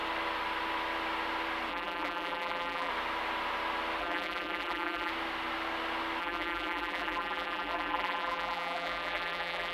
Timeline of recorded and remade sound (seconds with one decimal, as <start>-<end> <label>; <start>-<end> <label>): 0.0-1.7 recorded; 1.7-2.9 remade; 2.9-4.0 recorded; 4.0-5.1 remade; 5.1-6.2 recorded; 6.2-9.7 remade